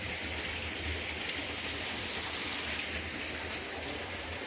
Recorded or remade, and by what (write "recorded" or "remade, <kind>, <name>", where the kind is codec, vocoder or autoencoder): recorded